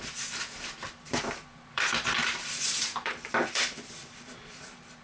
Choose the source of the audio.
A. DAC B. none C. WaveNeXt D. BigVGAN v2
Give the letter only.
D